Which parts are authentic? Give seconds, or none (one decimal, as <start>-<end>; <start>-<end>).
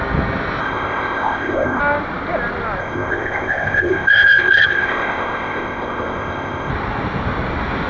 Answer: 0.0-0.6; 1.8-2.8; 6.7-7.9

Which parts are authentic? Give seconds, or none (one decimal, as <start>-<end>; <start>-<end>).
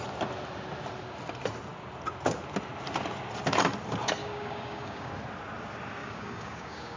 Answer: 0.0-4.2; 5.1-6.0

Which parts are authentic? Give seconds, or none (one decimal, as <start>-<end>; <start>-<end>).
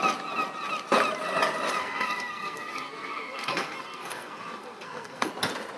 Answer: 0.0-1.8; 5.3-5.8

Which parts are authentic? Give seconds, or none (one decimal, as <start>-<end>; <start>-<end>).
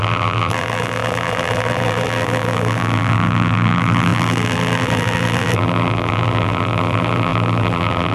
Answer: none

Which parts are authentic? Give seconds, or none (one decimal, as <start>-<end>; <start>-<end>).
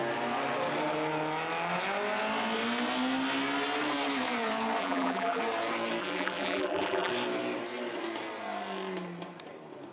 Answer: 0.0-4.8; 5.4-6.0; 7.1-9.9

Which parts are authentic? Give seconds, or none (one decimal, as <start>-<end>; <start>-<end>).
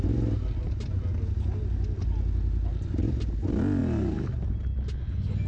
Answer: 0.0-5.5